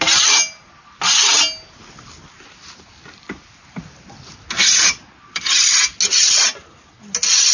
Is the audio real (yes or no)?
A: yes